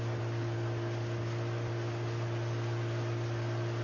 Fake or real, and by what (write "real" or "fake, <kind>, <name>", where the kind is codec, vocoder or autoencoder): real